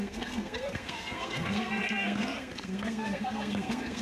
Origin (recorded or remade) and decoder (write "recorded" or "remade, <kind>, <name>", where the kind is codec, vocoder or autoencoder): remade, codec, SNAC